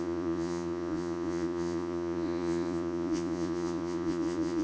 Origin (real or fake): fake